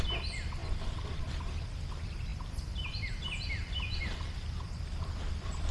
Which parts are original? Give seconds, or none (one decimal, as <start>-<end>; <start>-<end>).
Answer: 0.0-0.6; 1.2-3.6; 4.1-5.7

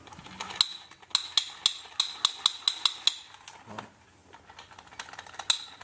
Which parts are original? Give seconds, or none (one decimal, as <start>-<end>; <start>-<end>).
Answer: 0.0-5.8

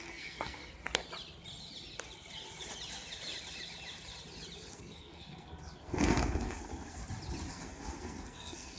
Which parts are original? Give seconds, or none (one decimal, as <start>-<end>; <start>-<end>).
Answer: 0.6-4.7; 7.0-7.5